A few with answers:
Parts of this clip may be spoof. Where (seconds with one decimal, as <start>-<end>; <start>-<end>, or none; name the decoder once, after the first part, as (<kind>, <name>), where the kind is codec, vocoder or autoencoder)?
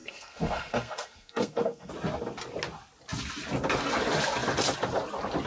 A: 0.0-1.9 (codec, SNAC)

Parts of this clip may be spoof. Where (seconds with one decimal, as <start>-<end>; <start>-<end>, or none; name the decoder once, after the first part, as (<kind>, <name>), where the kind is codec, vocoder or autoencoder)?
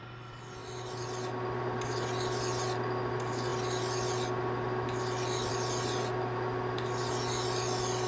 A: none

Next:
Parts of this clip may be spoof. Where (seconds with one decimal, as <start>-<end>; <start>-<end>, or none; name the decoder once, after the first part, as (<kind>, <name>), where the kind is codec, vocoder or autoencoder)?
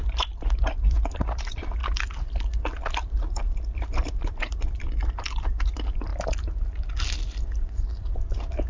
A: 0.0-1.8 (vocoder, BigVGAN v2); 2.9-6.1; 6.9-8.7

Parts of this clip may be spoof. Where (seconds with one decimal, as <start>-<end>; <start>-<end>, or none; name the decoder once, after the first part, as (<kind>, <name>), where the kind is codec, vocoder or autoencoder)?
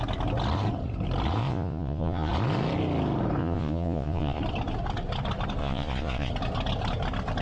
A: 1.4-2.3 (vocoder, Vocos); 3.4-4.4; 5.6-6.3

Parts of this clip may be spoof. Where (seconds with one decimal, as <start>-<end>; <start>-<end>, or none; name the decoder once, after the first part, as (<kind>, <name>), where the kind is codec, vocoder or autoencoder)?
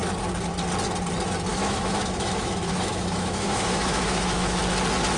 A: 1.5-4.6 (autoencoder, DAC-VAE)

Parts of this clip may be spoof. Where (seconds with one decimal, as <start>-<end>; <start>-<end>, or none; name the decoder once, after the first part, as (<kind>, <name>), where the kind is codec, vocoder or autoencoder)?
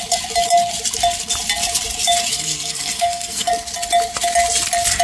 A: 2.3-3.5 (codec, SNAC)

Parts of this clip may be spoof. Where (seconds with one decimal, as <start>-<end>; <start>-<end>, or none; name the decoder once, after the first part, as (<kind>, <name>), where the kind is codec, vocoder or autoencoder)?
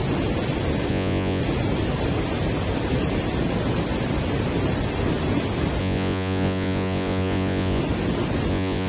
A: 0.9-1.4 (vocoder, Vocos); 5.8-7.8; 8.5-8.9